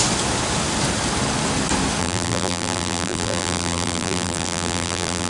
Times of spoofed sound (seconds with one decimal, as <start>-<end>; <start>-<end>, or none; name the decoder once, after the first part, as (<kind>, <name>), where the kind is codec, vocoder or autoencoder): 2.0-5.3 (vocoder, BigVGAN v2)